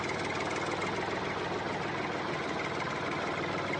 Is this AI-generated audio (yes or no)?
no